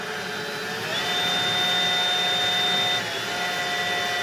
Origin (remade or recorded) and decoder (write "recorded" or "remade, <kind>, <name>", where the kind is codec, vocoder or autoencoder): recorded